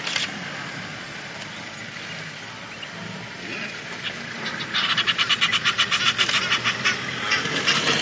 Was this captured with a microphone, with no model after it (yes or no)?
yes